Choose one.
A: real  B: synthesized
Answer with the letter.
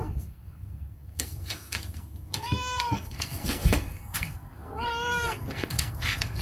B